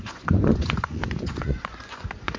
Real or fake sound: fake